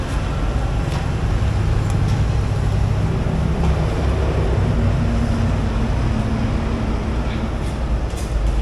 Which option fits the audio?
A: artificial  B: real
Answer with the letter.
B